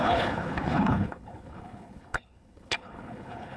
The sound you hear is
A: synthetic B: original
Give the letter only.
A